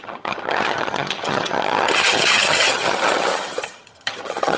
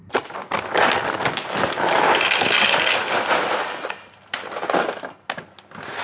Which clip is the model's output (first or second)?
first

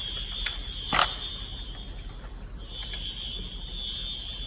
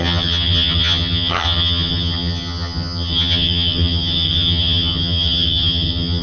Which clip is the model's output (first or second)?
second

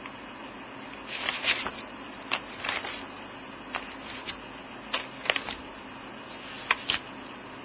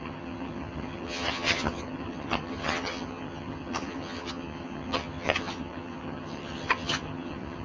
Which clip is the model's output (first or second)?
second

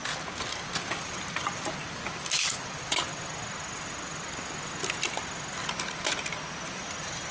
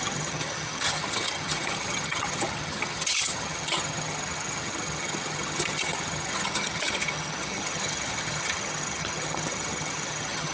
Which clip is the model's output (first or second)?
second